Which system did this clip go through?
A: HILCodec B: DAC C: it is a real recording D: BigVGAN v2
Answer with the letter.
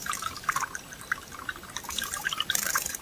D